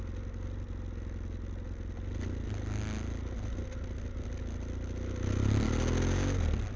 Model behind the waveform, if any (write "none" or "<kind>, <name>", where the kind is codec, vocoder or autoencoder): none